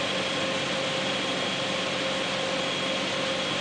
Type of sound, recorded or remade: recorded